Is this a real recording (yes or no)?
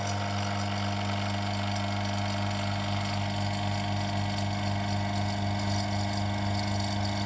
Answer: yes